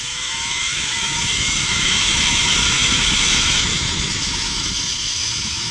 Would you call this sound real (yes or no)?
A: no